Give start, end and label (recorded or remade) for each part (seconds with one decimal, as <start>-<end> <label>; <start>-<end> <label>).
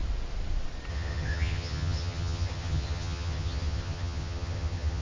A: 0.0-0.9 recorded; 0.9-5.0 remade